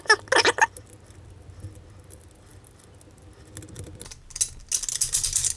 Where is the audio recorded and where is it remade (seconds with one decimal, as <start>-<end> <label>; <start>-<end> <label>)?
0.0-5.6 recorded